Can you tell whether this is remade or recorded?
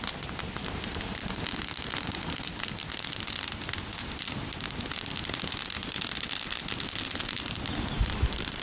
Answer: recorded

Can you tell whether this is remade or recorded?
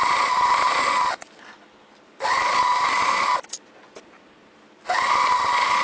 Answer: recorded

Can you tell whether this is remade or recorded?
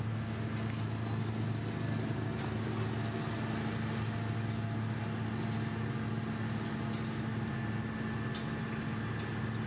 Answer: recorded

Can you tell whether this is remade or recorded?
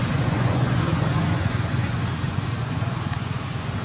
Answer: remade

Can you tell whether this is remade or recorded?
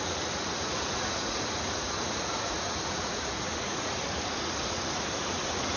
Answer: remade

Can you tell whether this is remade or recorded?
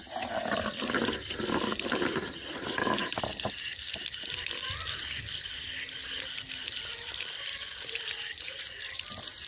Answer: recorded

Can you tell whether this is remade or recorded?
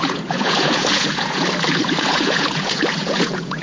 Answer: remade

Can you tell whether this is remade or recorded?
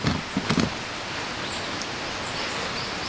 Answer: recorded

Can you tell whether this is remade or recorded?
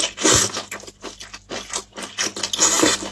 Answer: recorded